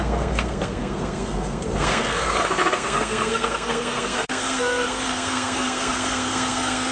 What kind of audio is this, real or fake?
fake